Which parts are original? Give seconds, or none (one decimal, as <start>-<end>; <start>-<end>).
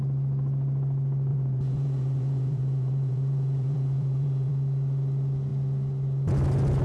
0.0-1.3; 4.5-6.8